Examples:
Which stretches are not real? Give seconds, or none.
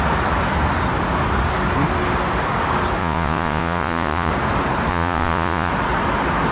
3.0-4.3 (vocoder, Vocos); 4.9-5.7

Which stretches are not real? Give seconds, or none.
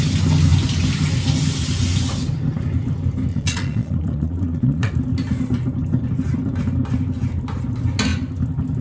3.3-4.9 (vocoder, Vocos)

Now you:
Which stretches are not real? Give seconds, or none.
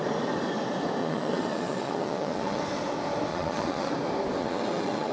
1.0-2.6 (vocoder, Vocos); 3.3-3.9; 4.4-5.1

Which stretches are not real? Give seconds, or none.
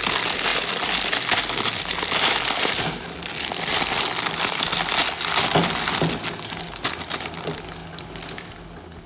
none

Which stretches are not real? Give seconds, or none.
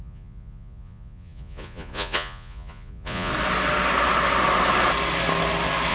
0.0-3.3 (vocoder, Vocos)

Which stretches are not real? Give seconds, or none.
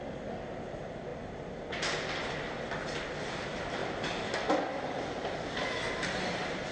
none